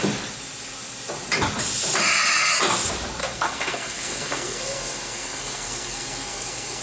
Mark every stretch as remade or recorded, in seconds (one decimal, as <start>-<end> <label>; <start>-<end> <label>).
0.0-3.2 recorded; 3.2-6.8 remade